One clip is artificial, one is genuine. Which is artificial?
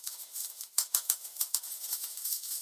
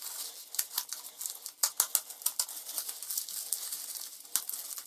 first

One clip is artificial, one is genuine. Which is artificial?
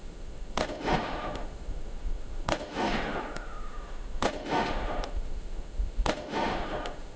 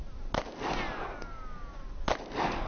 first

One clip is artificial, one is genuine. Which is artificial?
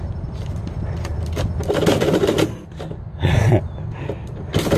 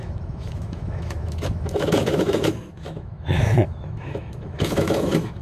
second